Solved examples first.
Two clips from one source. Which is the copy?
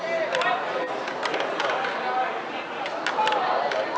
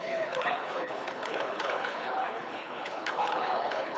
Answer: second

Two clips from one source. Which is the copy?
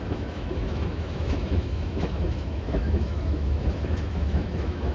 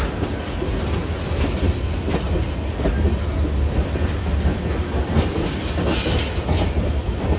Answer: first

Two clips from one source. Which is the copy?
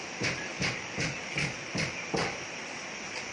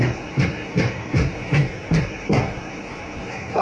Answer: second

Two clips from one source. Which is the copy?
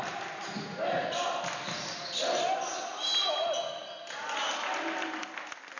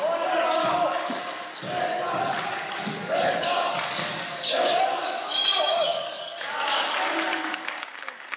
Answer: second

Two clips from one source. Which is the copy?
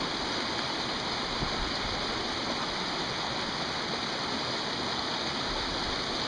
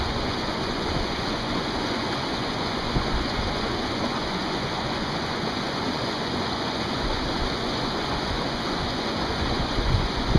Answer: second